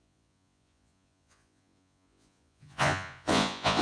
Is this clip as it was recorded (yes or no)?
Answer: no